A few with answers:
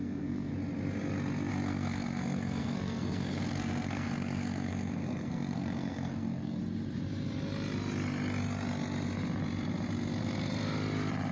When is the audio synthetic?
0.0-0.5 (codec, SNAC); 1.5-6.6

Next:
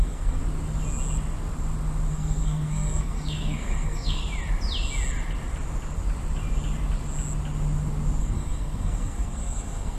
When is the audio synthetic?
0.0-0.4 (codec, SNAC); 2.1-4.2; 8.2-10.0